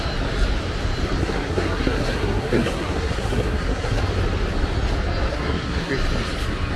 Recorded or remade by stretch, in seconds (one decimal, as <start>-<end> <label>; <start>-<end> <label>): 0.0-1.2 recorded; 1.2-4.0 remade; 4.0-5.3 recorded; 5.3-5.9 remade; 5.9-6.8 recorded